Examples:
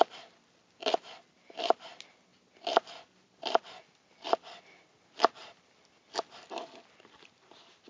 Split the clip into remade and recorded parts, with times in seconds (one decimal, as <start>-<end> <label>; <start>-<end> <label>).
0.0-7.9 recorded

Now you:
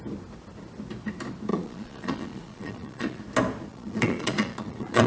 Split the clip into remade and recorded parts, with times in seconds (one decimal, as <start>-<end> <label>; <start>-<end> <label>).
0.0-1.5 recorded; 1.5-3.2 remade; 3.2-3.7 recorded; 3.7-5.1 remade

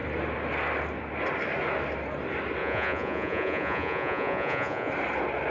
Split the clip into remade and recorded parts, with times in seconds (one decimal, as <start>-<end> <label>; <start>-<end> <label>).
0.0-2.6 recorded; 2.6-4.9 remade; 4.9-5.5 recorded

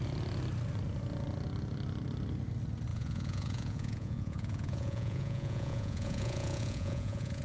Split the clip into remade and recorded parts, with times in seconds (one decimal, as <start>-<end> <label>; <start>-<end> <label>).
0.0-2.9 recorded; 2.9-7.4 remade

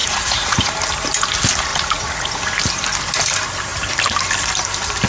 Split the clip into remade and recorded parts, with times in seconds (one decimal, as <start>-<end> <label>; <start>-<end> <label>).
0.0-0.7 remade; 0.7-1.7 recorded; 1.7-2.4 remade; 2.4-5.1 recorded

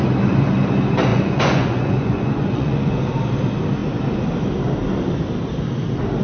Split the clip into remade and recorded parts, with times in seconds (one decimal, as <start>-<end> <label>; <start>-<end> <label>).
0.0-1.1 recorded; 1.1-3.0 remade; 3.0-6.2 recorded

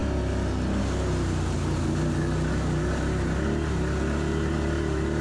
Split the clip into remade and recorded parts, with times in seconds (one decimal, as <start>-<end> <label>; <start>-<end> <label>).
0.0-5.2 recorded

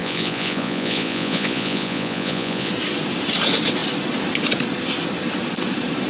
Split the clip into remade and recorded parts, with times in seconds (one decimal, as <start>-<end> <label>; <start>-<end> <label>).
0.0-2.7 remade; 2.7-6.1 recorded